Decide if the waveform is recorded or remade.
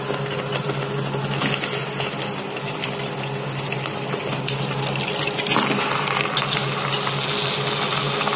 recorded